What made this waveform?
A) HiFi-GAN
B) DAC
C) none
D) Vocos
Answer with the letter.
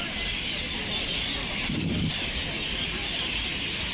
C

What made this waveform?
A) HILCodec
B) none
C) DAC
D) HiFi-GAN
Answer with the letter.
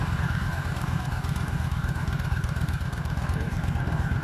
C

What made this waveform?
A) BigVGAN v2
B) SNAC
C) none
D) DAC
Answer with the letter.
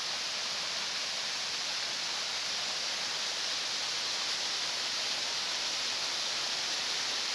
C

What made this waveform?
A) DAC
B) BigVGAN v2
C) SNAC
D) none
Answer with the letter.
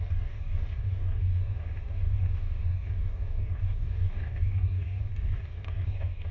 A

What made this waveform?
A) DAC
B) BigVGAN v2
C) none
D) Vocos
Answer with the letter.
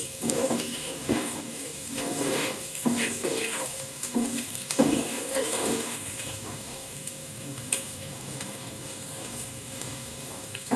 A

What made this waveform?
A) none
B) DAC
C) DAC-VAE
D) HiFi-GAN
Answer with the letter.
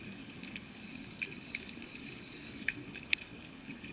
B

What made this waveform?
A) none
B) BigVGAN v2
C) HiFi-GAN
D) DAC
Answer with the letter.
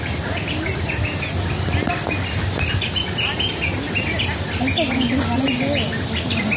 A